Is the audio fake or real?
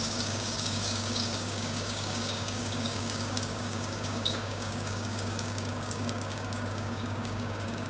fake